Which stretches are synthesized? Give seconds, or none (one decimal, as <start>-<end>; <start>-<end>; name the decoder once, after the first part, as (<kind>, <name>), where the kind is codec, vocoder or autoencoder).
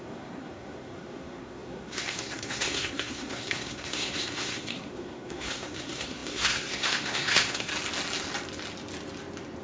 0.0-7.7 (codec, SNAC)